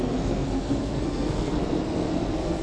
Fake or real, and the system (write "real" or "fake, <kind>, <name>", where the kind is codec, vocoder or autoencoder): fake, codec, SNAC